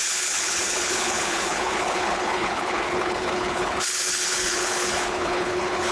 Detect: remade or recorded remade